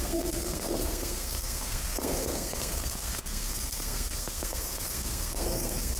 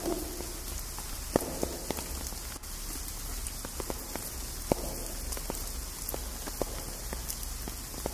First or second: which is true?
second